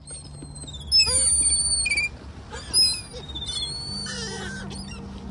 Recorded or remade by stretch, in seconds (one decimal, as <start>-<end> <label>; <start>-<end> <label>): 0.0-5.3 recorded